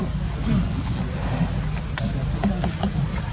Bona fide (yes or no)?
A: yes